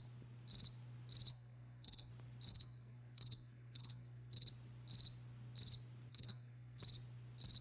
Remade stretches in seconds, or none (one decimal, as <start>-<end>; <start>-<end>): 1.3-2.1; 2.5-4.5; 6.1-6.8